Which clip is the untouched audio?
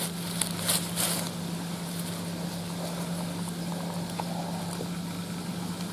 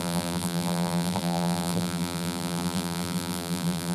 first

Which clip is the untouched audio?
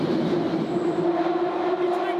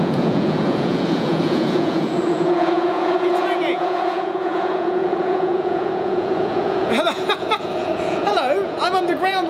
first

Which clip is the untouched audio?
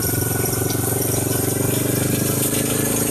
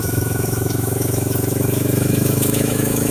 first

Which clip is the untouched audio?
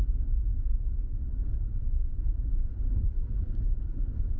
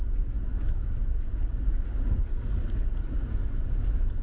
second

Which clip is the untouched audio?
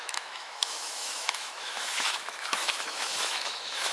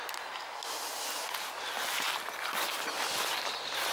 second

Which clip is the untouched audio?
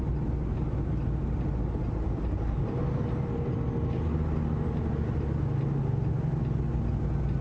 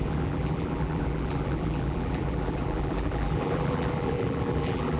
first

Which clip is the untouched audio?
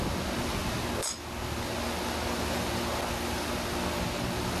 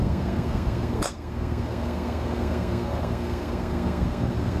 first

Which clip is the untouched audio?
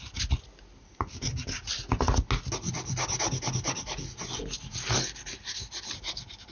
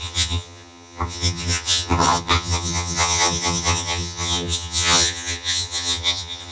first